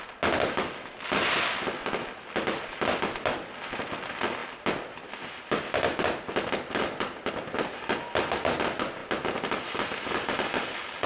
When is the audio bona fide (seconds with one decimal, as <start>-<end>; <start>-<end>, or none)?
0.0-1.8; 3.9-11.1